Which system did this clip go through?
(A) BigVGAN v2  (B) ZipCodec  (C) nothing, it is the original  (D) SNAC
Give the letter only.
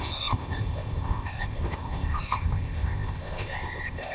B